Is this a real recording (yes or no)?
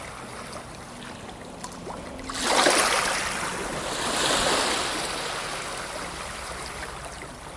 yes